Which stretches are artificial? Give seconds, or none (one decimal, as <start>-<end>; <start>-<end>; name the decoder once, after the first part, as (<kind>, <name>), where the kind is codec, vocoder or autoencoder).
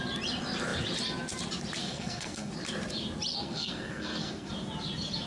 1.8-2.5 (codec, SNAC); 3.3-4.5